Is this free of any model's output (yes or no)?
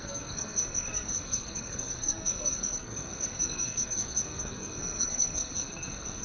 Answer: no